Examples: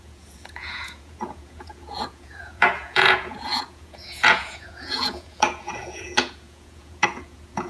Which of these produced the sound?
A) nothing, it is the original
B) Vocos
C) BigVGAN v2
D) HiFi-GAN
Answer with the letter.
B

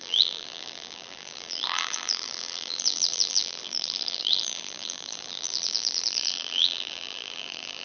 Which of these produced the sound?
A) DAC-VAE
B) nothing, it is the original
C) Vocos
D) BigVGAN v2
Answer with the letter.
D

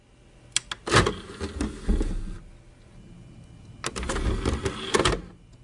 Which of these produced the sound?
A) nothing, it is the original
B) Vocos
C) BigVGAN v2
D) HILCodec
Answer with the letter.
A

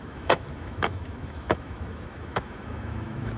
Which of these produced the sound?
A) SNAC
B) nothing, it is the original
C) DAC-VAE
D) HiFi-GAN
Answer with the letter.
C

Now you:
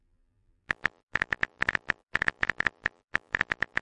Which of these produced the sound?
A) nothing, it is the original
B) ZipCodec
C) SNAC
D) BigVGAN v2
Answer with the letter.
D